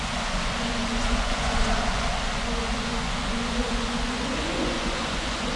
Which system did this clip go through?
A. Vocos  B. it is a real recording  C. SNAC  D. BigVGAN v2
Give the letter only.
A